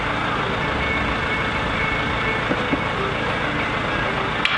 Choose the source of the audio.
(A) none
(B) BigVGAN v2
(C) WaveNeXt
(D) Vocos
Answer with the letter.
A